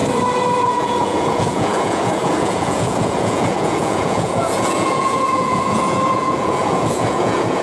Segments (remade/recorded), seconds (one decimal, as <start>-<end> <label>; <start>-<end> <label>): 0.0-0.6 recorded; 0.6-7.6 remade